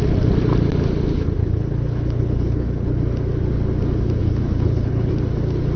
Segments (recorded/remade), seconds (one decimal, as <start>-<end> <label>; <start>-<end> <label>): 0.0-1.4 recorded; 1.4-2.9 remade; 2.9-4.2 recorded; 4.2-5.1 remade; 5.1-5.8 recorded

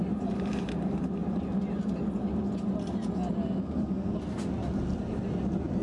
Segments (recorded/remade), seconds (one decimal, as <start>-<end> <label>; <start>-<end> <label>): 0.0-5.8 recorded

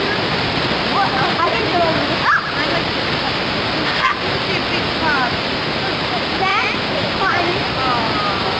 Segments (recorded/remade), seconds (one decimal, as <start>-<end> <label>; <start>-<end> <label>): 0.0-8.6 recorded

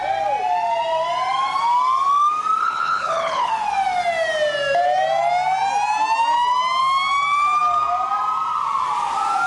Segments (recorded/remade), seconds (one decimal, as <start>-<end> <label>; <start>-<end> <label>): 0.0-2.6 recorded; 2.6-3.5 remade; 3.5-9.5 recorded

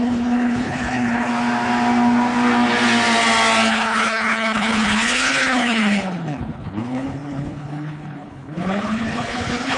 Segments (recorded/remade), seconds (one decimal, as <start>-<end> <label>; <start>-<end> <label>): 0.0-1.3 remade; 1.3-3.7 recorded; 3.7-9.8 remade

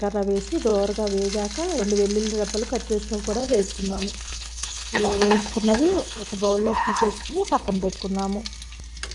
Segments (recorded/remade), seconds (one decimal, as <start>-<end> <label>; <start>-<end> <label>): 0.0-3.4 recorded; 3.4-8.0 remade; 8.0-9.1 recorded